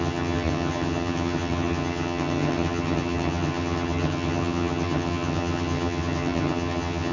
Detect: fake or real fake